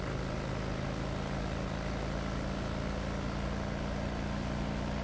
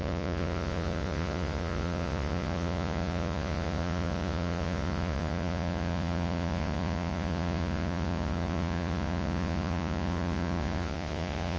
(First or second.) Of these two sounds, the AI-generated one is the second